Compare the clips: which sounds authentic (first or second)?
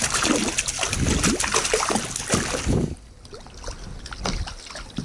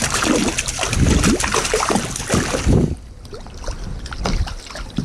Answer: first